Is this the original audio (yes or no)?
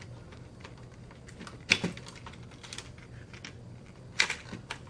yes